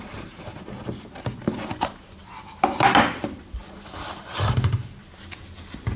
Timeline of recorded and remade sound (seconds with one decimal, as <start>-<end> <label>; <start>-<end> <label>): 0.0-6.0 recorded